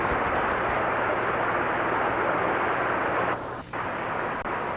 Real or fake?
real